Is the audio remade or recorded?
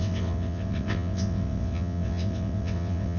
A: remade